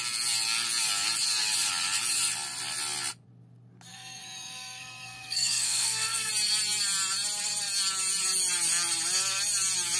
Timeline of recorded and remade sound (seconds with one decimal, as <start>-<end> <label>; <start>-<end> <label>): 0.0-3.9 recorded; 3.9-6.3 remade; 6.3-10.0 recorded